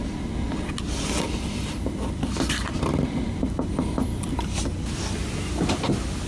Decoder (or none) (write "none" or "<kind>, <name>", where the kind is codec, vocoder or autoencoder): none